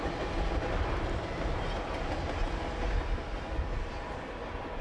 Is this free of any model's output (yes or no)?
yes